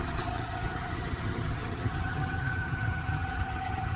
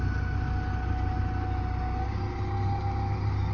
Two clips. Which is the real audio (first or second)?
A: second